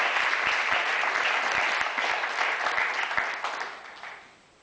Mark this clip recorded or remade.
recorded